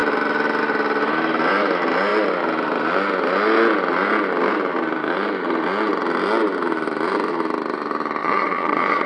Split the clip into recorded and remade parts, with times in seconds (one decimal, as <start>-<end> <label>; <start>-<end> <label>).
0.0-8.2 recorded; 8.2-9.1 remade